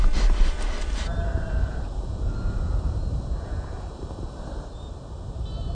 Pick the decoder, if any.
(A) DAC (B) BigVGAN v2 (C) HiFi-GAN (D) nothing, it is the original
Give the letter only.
B